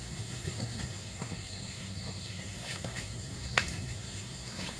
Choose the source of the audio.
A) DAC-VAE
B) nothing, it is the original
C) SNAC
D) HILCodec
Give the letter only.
C